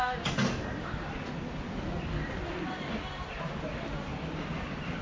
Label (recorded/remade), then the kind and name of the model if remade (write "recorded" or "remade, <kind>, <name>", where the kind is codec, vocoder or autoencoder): recorded